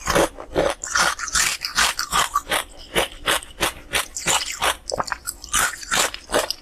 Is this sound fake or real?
fake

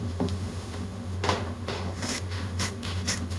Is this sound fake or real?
fake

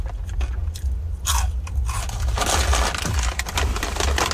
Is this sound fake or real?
real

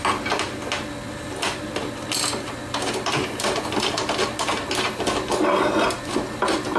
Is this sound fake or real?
real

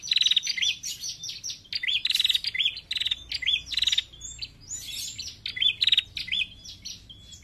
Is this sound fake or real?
real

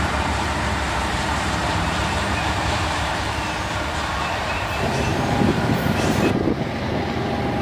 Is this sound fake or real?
fake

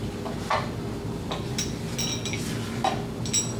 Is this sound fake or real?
real